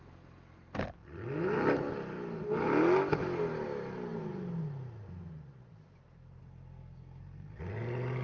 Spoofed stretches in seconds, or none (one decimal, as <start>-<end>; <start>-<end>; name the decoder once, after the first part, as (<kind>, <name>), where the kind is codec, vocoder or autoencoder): 6.4-7.6 (codec, SNAC)